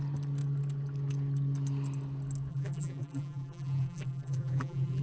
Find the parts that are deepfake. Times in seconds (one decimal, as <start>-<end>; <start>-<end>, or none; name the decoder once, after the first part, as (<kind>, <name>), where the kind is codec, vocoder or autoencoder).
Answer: 2.5-5.0 (vocoder, BigVGAN v2)